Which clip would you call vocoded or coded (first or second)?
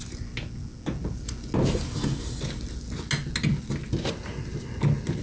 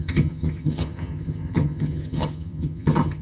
second